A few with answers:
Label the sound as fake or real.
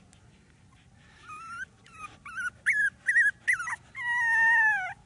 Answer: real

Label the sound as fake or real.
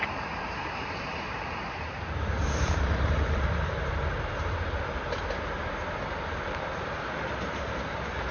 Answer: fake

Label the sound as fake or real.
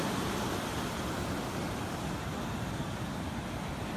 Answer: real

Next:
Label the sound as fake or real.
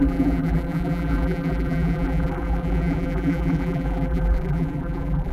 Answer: fake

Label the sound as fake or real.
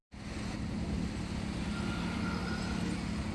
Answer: real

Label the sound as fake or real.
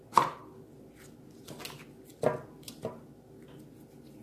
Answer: real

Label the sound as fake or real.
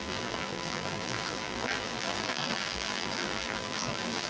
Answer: fake